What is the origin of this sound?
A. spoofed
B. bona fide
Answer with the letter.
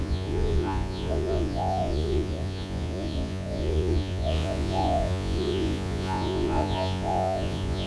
A